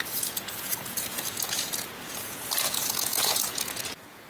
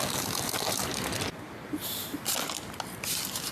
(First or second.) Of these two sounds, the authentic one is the second